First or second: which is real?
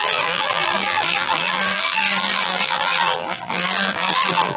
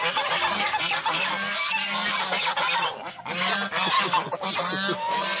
second